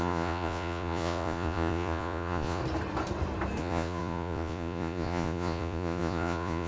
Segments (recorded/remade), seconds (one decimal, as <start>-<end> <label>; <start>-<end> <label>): 0.0-2.6 remade; 2.6-3.6 recorded; 3.6-6.7 remade